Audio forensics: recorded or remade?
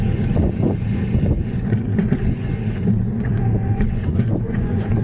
remade